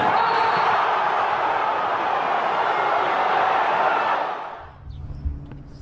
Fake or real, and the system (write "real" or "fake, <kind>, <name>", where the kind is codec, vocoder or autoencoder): real